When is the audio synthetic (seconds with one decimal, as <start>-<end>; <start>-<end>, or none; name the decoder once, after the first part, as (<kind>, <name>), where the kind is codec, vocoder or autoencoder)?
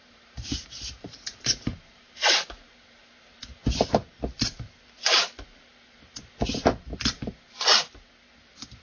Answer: 0.0-2.0 (vocoder, BigVGAN v2); 2.8-3.6; 8.4-8.8